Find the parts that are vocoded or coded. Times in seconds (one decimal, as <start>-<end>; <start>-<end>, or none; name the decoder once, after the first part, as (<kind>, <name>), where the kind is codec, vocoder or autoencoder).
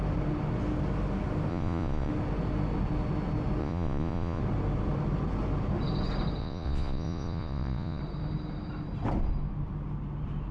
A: 1.5-2.1 (vocoder, Vocos); 3.6-4.4; 6.4-8.0